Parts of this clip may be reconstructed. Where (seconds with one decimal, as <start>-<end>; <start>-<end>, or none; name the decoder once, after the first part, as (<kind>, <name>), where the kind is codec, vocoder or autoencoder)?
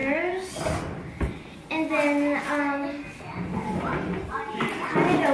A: none